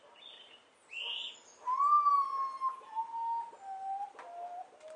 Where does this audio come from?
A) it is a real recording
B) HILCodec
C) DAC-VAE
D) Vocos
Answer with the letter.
A